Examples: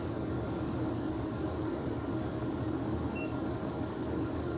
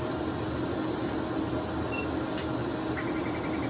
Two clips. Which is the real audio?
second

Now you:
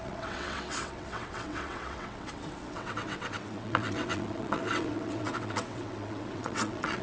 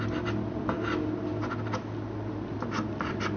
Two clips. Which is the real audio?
second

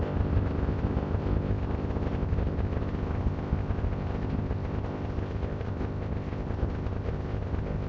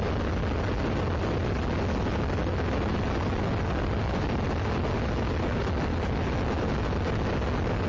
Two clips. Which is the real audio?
second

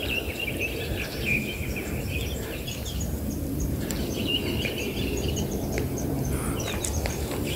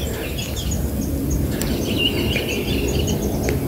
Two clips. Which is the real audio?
second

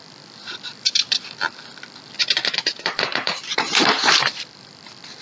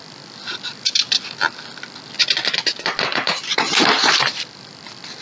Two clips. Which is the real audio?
second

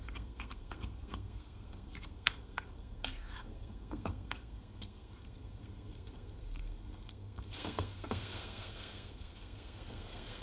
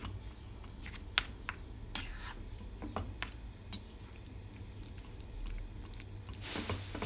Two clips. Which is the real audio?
second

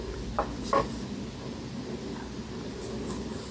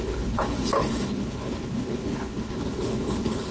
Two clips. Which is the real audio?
first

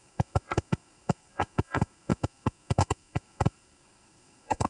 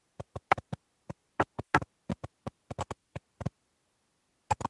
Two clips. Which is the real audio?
second